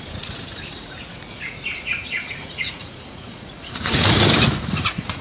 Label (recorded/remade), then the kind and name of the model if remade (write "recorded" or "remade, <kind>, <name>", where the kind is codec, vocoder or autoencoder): remade, vocoder, Vocos